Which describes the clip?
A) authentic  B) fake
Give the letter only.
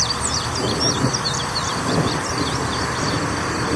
B